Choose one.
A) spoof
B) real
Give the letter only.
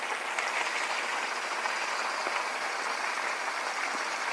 B